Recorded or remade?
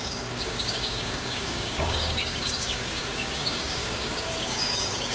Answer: remade